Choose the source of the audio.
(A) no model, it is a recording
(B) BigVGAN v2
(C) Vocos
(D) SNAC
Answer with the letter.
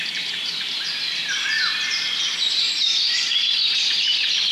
B